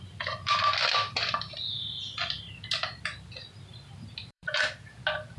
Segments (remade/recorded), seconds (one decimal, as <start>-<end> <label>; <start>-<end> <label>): 0.0-4.2 recorded; 4.2-4.7 remade; 4.7-5.4 recorded